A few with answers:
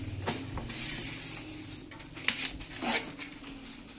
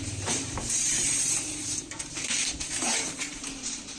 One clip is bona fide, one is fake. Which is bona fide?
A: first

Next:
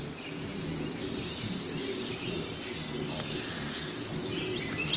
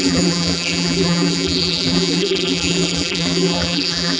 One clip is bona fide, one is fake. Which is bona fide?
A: first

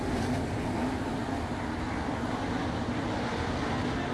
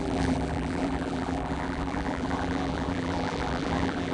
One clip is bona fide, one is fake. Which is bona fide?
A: first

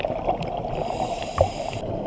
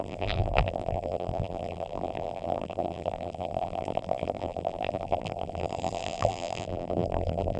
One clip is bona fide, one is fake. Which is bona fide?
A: first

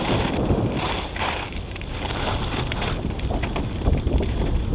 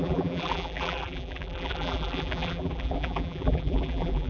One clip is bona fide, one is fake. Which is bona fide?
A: first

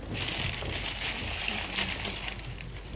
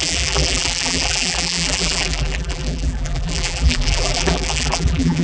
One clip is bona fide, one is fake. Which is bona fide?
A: first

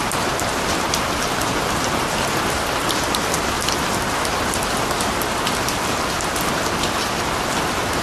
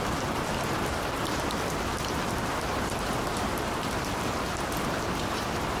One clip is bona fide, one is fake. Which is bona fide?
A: first